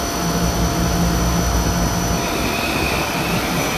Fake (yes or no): no